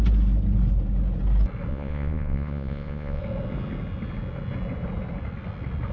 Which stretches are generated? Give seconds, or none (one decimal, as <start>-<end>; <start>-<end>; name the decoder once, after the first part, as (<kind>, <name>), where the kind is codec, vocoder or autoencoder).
1.7-3.2 (vocoder, Vocos)